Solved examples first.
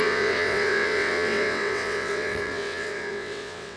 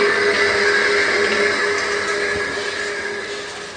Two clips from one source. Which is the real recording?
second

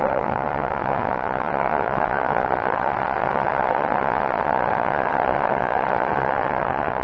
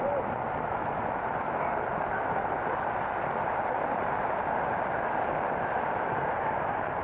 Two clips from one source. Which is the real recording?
second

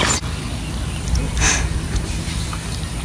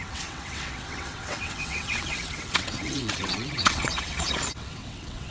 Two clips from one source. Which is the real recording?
first